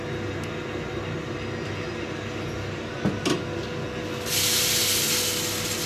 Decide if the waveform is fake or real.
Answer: real